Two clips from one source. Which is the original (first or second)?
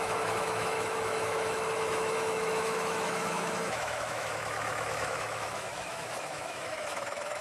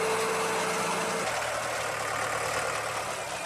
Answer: second